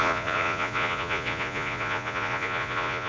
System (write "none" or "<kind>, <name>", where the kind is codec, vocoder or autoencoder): vocoder, Vocos